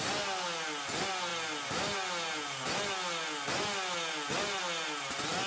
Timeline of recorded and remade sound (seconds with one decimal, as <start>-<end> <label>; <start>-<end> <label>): 0.0-5.5 recorded